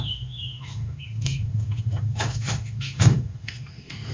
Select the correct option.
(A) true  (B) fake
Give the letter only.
B